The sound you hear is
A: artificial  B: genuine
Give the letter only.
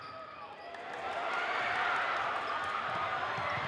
B